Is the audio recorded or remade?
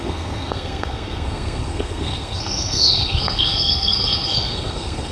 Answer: remade